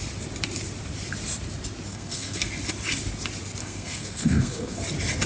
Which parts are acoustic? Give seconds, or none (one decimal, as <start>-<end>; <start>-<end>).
0.0-1.9; 2.5-3.6; 4.8-5.3